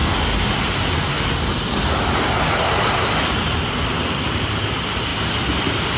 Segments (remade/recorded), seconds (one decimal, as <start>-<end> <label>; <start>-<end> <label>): 0.0-6.0 recorded